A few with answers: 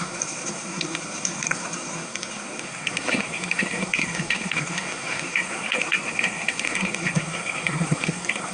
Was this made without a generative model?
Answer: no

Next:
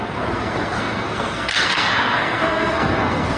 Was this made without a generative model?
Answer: no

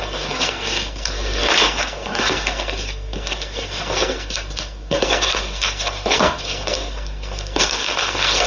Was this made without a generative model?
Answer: no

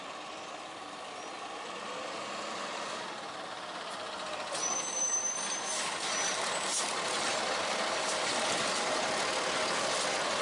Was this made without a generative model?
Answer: yes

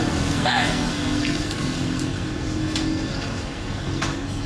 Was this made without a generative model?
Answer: no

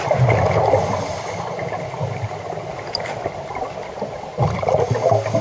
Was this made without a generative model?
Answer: yes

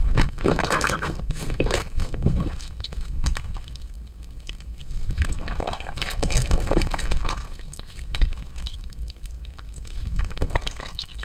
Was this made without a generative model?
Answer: no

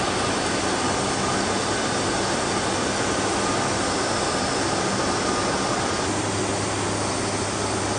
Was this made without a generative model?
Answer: yes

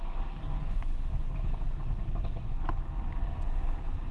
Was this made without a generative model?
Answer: yes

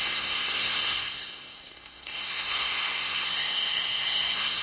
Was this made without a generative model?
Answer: no